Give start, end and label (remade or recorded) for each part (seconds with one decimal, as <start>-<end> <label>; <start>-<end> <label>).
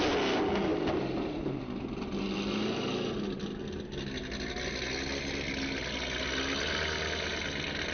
0.0-7.9 recorded